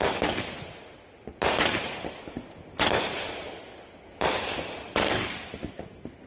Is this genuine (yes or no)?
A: yes